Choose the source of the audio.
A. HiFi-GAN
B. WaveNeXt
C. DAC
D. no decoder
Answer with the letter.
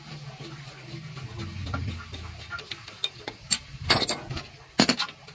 D